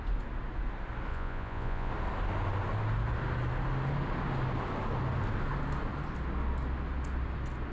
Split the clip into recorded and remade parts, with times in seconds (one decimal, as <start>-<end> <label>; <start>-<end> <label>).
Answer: 0.0-1.1 recorded; 1.1-1.9 remade; 1.9-7.7 recorded